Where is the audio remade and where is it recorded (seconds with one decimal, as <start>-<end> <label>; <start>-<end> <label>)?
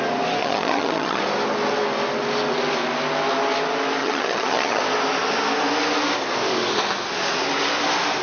0.0-0.4 recorded; 0.4-1.2 remade; 1.2-4.0 recorded; 4.0-4.8 remade; 4.8-8.2 recorded